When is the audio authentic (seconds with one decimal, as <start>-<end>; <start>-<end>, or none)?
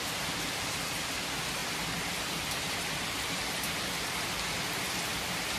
0.0-1.6; 2.9-5.6